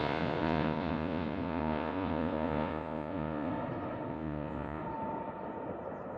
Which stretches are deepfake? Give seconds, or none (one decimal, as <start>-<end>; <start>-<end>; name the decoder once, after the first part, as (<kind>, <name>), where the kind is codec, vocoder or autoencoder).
0.0-3.5 (vocoder, Vocos); 4.1-4.8